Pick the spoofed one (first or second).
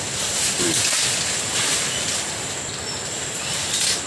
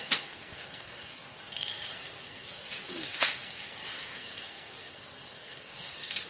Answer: second